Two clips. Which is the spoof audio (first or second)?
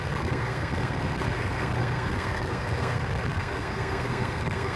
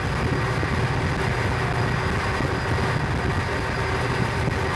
first